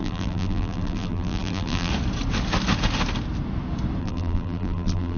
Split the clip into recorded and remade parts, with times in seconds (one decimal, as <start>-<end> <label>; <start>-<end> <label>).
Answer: 0.0-1.9 remade; 1.9-4.0 recorded; 4.0-5.2 remade